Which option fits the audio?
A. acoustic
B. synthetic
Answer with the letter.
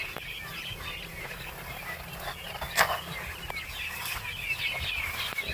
A